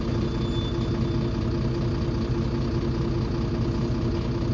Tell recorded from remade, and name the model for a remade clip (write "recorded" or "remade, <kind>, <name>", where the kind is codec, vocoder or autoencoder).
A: recorded